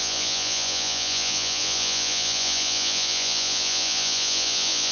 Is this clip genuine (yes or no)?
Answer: no